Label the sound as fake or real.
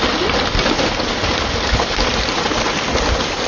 real